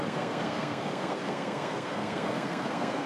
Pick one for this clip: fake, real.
fake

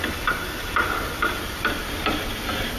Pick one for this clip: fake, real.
real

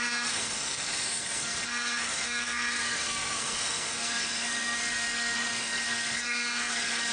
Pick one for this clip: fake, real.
fake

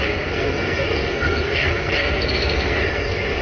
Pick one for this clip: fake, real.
fake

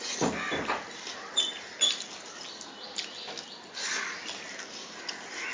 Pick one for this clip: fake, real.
real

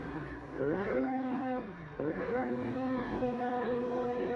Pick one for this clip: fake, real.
fake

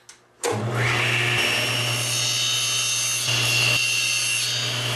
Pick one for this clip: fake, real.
real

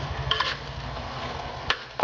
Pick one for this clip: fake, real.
fake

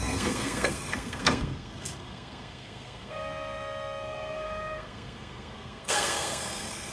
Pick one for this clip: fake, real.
fake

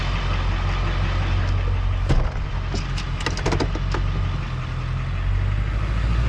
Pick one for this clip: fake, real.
real